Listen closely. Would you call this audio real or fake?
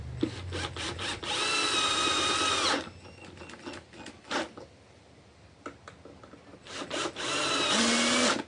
real